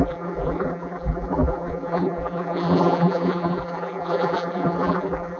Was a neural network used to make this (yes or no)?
yes